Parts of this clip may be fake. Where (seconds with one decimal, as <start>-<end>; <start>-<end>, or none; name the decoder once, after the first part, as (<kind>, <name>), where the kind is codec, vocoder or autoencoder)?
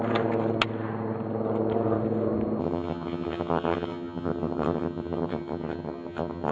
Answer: 2.6-6.5 (vocoder, HiFi-GAN)